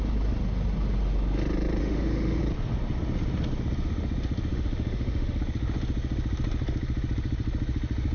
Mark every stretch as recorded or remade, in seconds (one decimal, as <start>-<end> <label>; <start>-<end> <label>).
0.0-1.8 recorded; 1.8-2.4 remade; 2.4-4.5 recorded; 4.5-5.4 remade; 5.4-8.1 recorded